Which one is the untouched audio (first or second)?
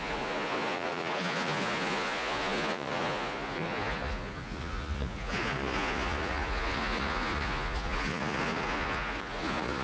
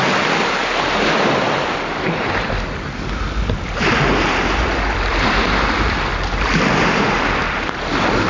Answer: second